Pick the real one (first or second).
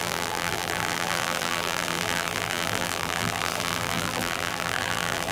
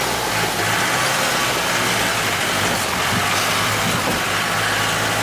second